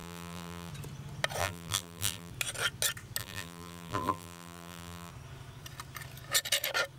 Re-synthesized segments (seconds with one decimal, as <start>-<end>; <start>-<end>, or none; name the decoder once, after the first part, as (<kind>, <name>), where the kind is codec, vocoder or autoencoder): 0.0-0.7 (vocoder, BigVGAN v2); 1.4-2.3; 3.2-5.1